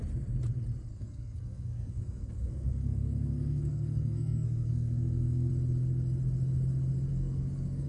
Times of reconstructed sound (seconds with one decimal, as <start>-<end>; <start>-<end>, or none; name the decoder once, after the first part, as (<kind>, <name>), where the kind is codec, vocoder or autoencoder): 0.9-5.5 (codec, SNAC); 7.1-7.9